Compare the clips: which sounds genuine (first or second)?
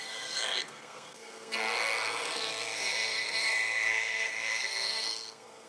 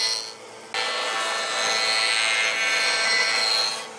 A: second